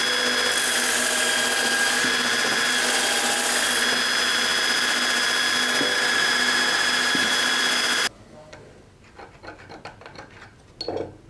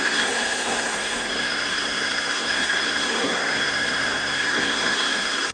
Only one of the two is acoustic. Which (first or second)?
first